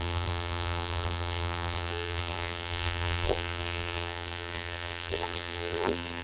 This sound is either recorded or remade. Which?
remade